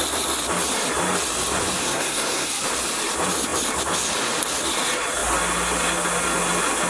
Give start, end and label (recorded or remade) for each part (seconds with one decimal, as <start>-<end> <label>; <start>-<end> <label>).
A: 0.0-1.8 recorded; 1.8-2.5 remade; 2.5-6.9 recorded